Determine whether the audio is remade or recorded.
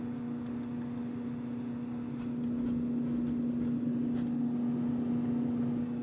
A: recorded